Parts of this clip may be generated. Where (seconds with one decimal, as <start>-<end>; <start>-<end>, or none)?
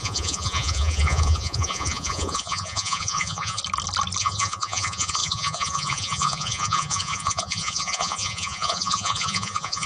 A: 0.0-3.6; 4.2-9.9